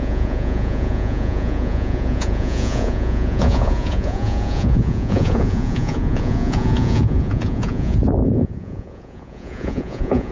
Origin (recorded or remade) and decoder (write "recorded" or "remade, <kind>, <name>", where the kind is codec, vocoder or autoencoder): remade, vocoder, Vocos